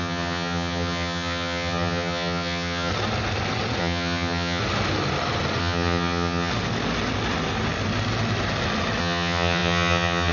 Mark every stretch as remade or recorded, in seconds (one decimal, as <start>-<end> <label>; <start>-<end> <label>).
0.0-2.9 remade; 2.9-3.8 recorded; 3.8-4.6 remade; 4.6-5.6 recorded; 5.6-6.5 remade; 6.5-9.0 recorded; 9.0-10.3 remade